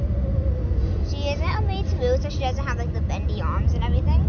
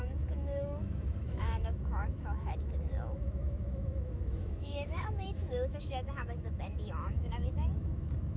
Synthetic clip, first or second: second